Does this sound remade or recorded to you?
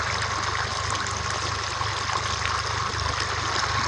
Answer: recorded